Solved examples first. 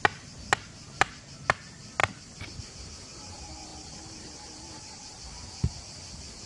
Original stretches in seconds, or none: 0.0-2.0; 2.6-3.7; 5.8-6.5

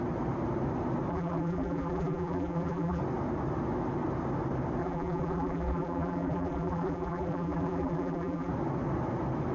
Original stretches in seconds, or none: 0.0-1.1; 3.0-4.8; 8.5-9.5

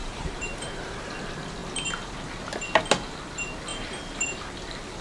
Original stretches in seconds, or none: 1.0-5.0

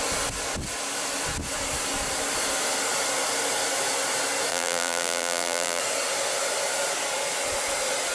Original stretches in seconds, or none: 0.0-4.5; 5.8-8.1

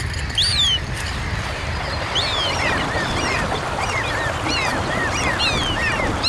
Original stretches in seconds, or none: 0.0-0.5; 3.8-4.7; 5.2-6.3

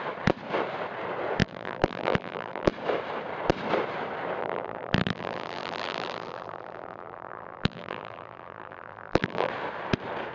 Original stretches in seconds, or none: 0.0-1.4; 2.7-4.4; 9.5-10.3